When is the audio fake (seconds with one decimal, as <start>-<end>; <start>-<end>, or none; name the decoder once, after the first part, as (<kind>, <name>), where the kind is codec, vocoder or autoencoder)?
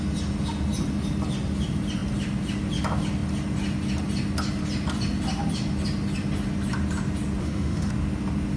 7.4-7.9 (autoencoder, DAC-VAE)